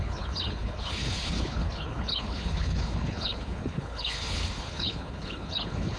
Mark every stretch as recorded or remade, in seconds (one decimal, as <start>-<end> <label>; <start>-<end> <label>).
0.0-6.0 remade